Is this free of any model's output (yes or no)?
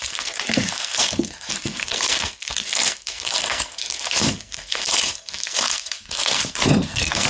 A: no